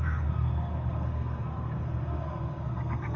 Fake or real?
fake